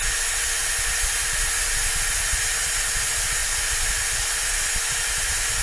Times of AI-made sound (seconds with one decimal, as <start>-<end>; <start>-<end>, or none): none